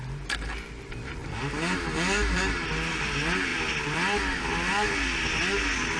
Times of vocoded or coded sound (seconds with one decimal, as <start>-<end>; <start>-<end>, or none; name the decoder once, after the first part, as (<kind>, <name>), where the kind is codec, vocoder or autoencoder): none